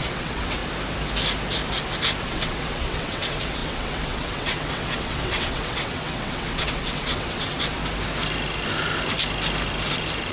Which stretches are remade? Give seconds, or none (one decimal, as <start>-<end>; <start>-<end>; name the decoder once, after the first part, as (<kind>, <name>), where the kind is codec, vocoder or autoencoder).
0.0-0.6 (vocoder, WaveNeXt); 2.2-7.8